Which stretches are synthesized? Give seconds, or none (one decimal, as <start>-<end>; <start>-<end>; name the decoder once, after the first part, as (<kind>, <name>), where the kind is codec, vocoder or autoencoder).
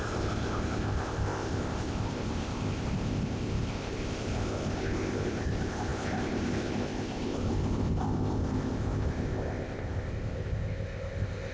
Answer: 0.0-11.5 (codec, ZipCodec)